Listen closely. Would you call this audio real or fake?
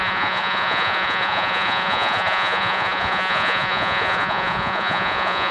fake